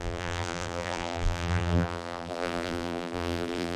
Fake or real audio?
fake